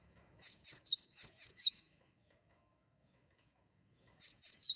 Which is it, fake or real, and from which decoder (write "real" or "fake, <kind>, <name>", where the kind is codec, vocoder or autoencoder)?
fake, autoencoder, DAC-VAE